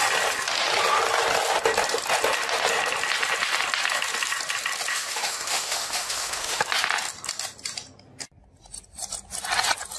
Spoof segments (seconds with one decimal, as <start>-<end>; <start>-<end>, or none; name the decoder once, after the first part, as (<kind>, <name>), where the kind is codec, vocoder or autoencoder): 4.9-6.6 (autoencoder, DAC-VAE)